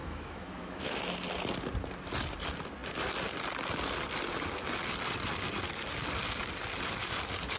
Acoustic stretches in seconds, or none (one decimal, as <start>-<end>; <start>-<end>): 1.0-7.6